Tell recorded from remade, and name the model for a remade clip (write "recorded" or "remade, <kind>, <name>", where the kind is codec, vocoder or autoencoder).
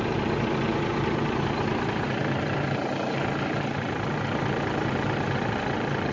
remade, vocoder, BigVGAN v2